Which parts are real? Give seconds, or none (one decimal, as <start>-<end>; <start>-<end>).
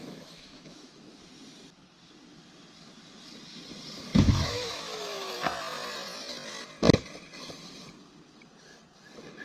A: 1.1-4.1; 5.3-9.4